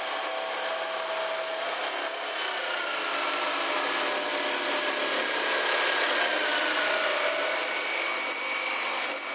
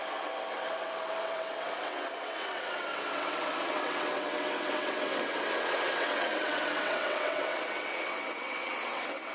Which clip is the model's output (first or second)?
second